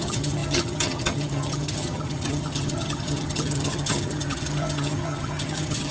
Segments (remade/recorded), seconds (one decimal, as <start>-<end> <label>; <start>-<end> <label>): 0.0-5.9 remade

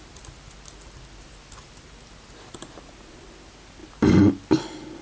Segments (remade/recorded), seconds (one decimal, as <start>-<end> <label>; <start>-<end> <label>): 0.0-5.0 recorded

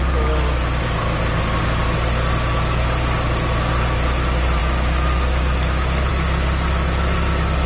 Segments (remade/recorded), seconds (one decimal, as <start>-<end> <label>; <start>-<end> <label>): 0.0-7.7 recorded

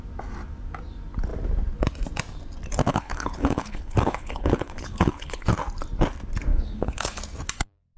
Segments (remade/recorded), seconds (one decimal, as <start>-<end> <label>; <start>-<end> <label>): 0.0-2.9 recorded; 2.9-5.5 remade; 5.5-6.5 recorded; 6.5-7.2 remade; 7.2-8.0 recorded

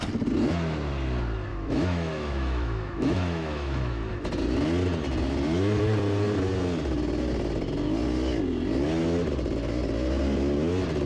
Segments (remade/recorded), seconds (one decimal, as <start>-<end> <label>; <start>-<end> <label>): 0.0-1.5 recorded; 1.5-4.3 remade; 4.3-11.1 recorded

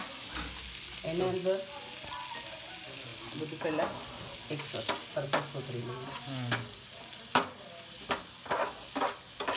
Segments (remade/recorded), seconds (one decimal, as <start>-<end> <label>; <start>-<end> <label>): 0.0-9.6 recorded